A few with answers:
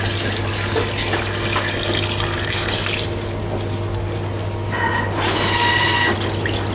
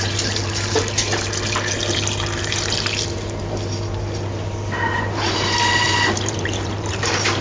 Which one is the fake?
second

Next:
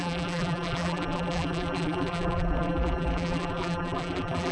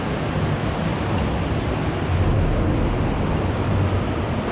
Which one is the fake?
first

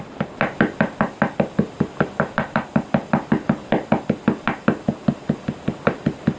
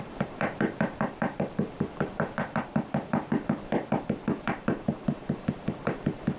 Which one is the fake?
second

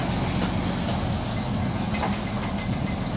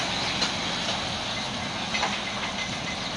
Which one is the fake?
second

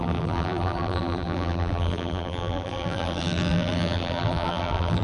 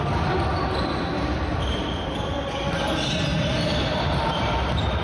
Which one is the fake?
first